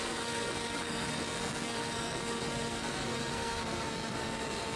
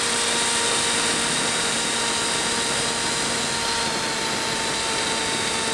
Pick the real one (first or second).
second